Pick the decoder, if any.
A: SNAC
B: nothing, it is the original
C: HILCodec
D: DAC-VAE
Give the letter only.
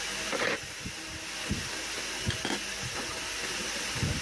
B